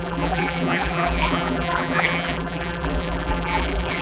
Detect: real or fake fake